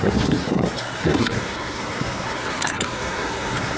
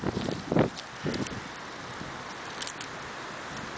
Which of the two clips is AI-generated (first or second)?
first